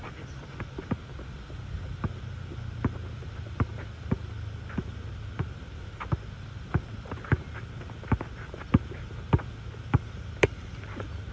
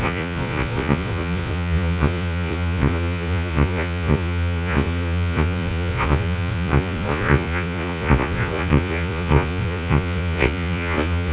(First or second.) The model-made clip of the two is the second